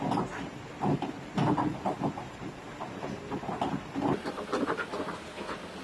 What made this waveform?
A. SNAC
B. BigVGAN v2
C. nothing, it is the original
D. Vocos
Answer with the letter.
B